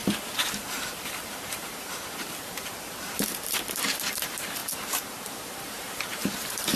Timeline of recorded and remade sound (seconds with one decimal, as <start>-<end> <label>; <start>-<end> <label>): 0.0-6.8 remade